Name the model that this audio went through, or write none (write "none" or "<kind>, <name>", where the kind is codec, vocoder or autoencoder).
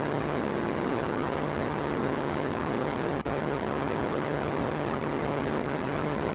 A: vocoder, HiFi-GAN